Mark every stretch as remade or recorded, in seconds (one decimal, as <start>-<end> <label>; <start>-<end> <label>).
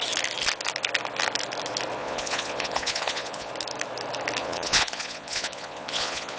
0.0-2.0 recorded; 2.0-3.5 remade; 3.5-4.4 recorded; 4.4-6.4 remade